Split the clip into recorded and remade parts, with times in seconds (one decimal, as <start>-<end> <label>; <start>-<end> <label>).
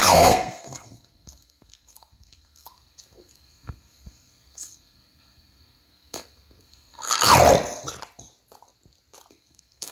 0.0-7.3 remade; 7.3-9.3 recorded; 9.3-9.9 remade